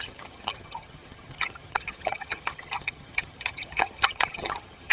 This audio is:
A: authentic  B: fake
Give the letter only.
B